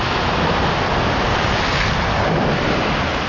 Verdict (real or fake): real